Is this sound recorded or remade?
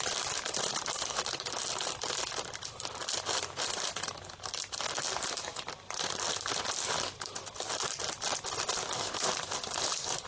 recorded